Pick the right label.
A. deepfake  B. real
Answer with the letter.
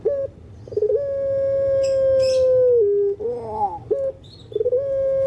B